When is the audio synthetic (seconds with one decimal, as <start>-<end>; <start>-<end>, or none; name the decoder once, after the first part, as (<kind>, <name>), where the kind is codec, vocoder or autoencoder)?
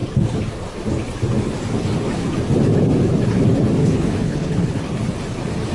3.8-4.8 (codec, HILCodec)